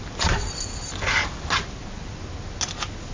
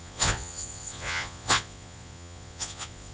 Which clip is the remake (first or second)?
second